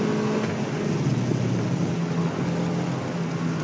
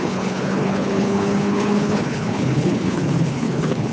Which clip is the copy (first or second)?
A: second